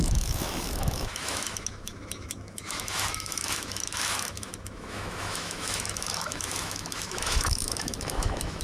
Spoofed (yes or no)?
yes